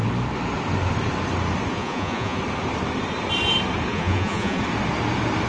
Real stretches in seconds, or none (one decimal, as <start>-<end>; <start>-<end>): 0.0-1.7; 2.4-3.9; 4.6-5.5